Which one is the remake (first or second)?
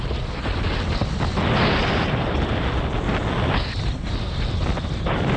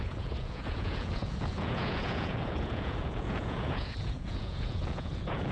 second